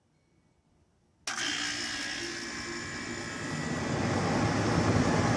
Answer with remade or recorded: recorded